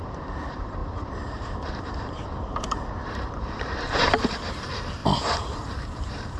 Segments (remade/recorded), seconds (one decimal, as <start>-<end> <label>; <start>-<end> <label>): 0.0-5.0 remade; 5.0-5.9 recorded; 5.9-6.4 remade